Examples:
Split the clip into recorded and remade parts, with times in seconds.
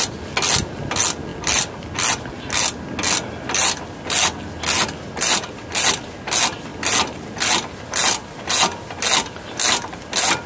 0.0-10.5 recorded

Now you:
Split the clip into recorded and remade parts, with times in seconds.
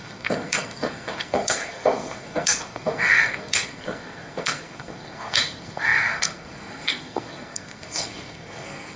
0.0-9.0 remade